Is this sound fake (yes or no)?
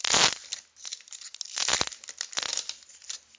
no